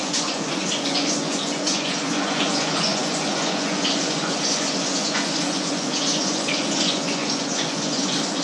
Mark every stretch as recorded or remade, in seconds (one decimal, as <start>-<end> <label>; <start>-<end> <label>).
0.0-8.4 remade